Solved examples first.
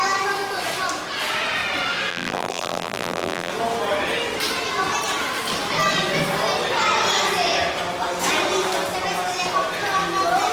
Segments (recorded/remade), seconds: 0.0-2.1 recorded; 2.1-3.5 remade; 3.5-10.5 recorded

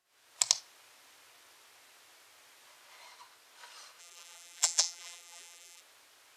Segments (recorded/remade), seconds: 0.0-4.0 recorded; 4.0-5.8 remade; 5.8-6.4 recorded